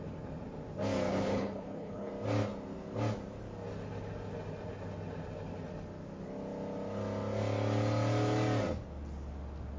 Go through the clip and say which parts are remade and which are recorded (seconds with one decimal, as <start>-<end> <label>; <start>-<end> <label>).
0.0-1.1 recorded; 1.1-2.1 remade; 2.1-9.8 recorded